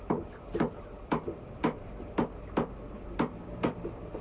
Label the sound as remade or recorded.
recorded